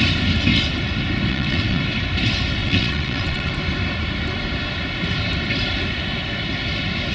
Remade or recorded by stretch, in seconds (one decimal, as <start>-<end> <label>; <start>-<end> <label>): 0.0-1.3 recorded; 1.3-1.8 remade; 1.8-2.6 recorded; 2.6-3.5 remade; 3.5-7.1 recorded